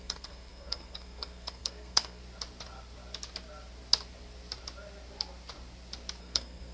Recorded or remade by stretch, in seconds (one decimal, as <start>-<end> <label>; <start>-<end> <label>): 0.0-2.2 remade; 2.2-6.2 recorded; 6.2-6.7 remade